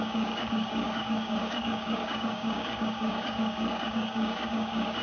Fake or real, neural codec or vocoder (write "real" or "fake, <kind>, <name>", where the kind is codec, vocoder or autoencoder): fake, codec, DAC